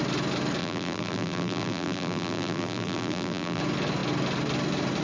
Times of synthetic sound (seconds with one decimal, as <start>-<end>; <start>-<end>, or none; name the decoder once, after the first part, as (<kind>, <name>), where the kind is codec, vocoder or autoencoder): 0.6-3.6 (vocoder, BigVGAN v2)